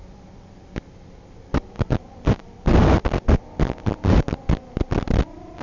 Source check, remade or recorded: recorded